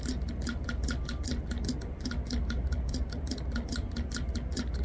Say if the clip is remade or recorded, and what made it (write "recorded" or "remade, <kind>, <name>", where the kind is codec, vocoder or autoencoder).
recorded